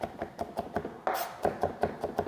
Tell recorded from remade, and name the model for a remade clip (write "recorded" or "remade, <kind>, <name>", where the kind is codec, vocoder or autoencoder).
recorded